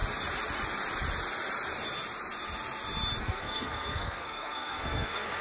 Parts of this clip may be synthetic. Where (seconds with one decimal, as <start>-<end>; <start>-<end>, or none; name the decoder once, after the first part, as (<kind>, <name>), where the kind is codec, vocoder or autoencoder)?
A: 3.2-5.4 (codec, SNAC)